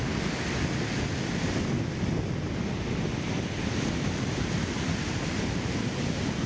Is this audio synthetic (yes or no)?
no